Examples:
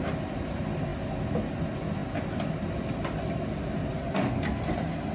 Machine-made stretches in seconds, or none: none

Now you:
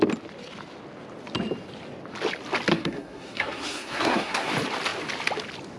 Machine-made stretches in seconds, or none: 2.7-4.5

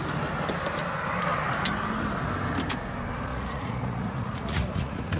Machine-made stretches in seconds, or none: 3.3-5.2

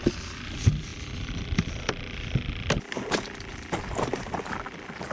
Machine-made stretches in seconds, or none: none

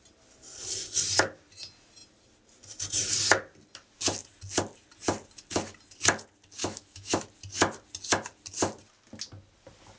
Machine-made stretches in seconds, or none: 6.6-7.2

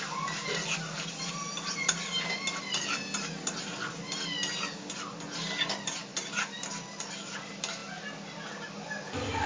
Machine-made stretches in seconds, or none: none

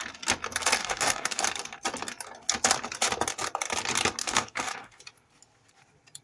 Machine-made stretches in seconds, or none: 0.8-1.4; 4.2-5.0